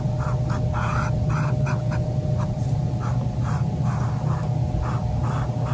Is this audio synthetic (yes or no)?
no